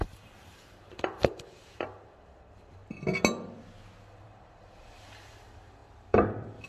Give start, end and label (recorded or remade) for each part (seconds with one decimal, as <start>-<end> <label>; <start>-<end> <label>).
0.0-2.8 remade; 2.8-4.0 recorded; 4.0-6.7 remade